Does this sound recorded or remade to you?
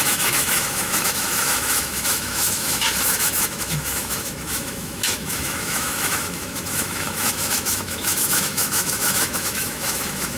remade